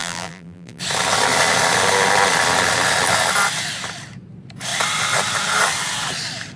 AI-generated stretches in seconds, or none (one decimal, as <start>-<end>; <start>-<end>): 0.0-0.8